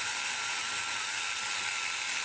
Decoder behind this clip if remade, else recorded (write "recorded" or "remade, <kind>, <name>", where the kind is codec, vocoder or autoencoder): recorded